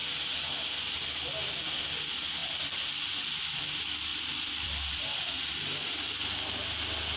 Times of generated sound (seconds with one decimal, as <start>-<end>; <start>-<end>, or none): 2.4-3.6; 4.1-5.2